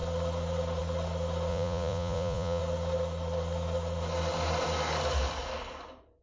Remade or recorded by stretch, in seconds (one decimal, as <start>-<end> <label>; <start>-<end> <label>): 0.0-1.5 recorded; 1.5-2.6 remade; 2.6-6.2 recorded